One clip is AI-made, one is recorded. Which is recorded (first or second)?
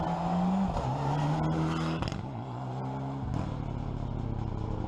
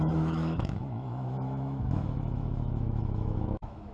first